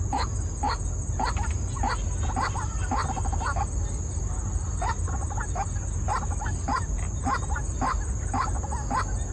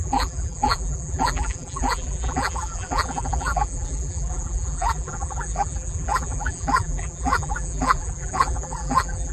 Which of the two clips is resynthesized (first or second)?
second